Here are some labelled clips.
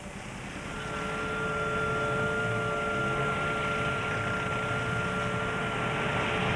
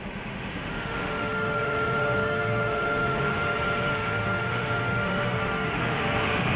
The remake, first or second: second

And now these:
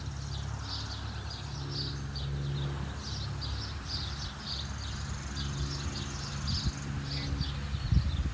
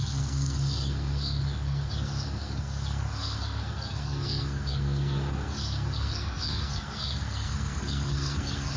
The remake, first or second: second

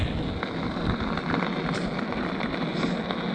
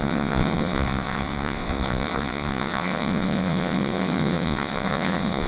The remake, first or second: second